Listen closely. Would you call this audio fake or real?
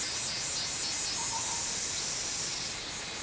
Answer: real